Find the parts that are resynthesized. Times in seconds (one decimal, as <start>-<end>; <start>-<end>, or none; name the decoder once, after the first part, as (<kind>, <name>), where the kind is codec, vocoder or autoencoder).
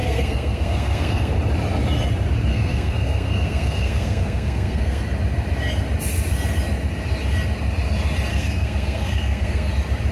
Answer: 0.0-1.3 (codec, SNAC); 2.5-5.0; 8.3-9.7